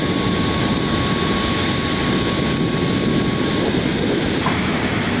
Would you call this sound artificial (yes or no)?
no